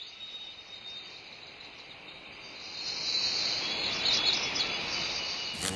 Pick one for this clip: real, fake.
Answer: real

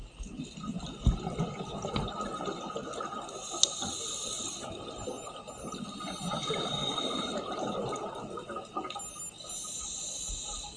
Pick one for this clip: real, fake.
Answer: real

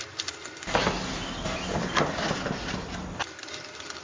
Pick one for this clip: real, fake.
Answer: real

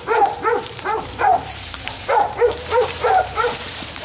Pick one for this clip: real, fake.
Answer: fake